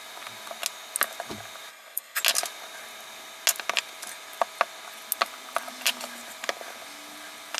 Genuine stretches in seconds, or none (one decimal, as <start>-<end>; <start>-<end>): 0.0-1.7; 2.2-7.6